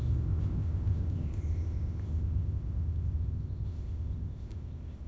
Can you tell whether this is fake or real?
fake